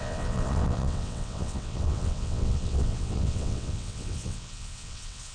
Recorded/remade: remade